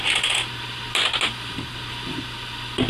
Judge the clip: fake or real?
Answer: real